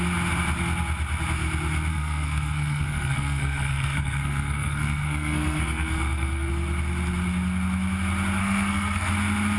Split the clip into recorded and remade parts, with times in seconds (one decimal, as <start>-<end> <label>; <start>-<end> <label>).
0.0-1.9 recorded; 1.9-6.5 remade; 6.5-8.4 recorded; 8.4-9.1 remade; 9.1-9.6 recorded